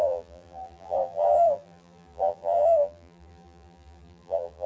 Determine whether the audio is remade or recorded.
remade